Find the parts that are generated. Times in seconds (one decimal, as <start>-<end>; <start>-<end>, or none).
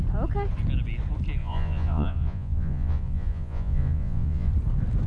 1.4-4.5